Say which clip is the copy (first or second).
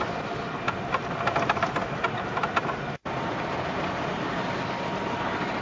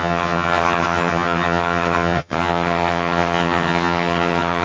second